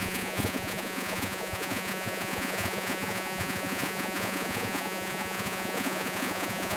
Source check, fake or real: fake